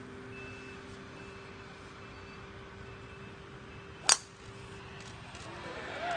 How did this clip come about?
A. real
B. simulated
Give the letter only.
A